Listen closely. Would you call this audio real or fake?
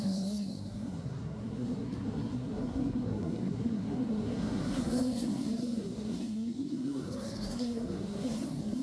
fake